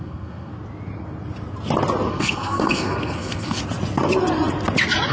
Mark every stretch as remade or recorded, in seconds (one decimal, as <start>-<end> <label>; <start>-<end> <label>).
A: 0.0-0.5 remade; 0.5-2.1 recorded; 2.1-3.6 remade; 3.6-5.1 recorded